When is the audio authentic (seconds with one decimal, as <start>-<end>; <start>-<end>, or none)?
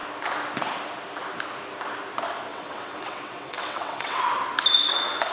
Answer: 0.0-2.5; 4.2-5.3